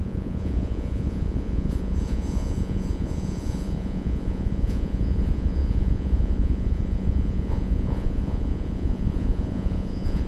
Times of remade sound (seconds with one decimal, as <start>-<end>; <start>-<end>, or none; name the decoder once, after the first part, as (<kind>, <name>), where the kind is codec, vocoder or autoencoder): 0.0-10.3 (vocoder, Vocos)